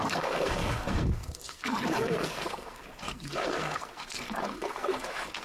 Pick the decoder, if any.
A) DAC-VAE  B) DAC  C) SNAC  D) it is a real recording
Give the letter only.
C